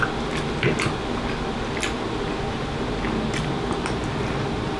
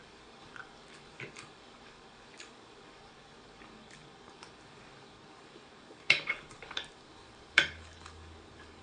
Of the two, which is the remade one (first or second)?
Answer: second